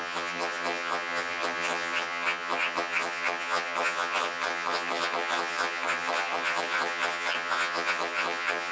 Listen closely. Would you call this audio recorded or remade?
remade